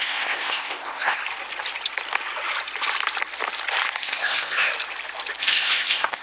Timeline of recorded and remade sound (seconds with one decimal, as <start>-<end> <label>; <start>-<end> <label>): 0.0-1.2 remade; 1.2-4.0 recorded; 4.0-4.7 remade; 4.7-5.4 recorded; 5.4-6.2 remade